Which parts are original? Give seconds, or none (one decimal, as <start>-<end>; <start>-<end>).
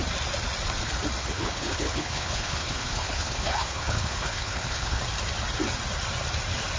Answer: 0.0-1.2; 5.0-6.8